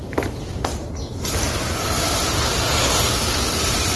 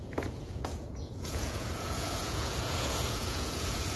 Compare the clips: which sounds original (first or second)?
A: first